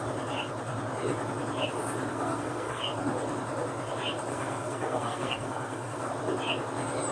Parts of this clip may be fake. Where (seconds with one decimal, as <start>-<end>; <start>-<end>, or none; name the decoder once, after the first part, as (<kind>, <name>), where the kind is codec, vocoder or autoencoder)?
2.1-2.8 (codec, SNAC); 4.3-6.1